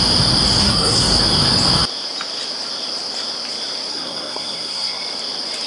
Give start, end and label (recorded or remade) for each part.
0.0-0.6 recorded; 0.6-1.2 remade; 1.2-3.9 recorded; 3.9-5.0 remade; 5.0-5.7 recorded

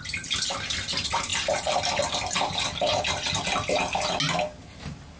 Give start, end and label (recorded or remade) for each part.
0.0-5.2 recorded

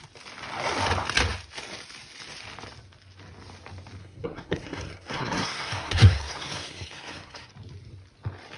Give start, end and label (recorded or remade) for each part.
0.0-4.0 recorded; 4.0-7.5 remade; 7.5-8.6 recorded